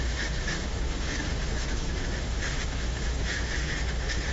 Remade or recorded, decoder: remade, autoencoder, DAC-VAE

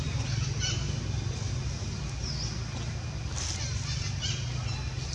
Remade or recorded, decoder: recorded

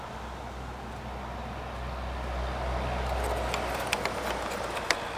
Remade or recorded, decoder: recorded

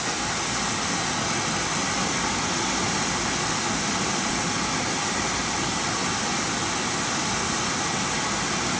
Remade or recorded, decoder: recorded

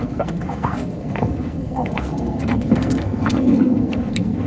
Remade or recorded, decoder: remade, codec, SNAC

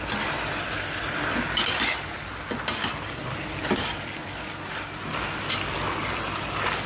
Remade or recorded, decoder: recorded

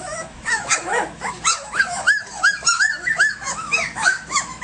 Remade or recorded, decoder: remade, autoencoder, DAC-VAE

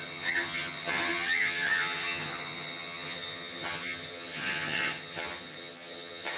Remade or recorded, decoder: remade, vocoder, HiFi-GAN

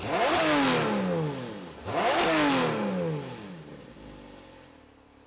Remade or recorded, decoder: recorded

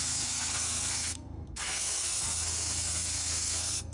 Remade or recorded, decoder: remade, codec, SNAC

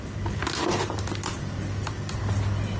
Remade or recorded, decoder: recorded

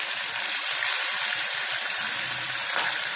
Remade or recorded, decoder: remade, vocoder, BigVGAN v2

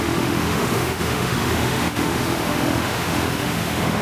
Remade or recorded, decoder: remade, autoencoder, DAC-VAE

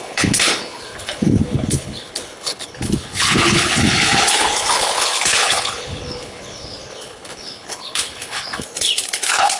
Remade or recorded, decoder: remade, codec, HILCodec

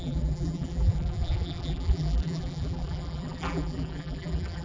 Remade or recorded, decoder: remade, vocoder, BigVGAN v2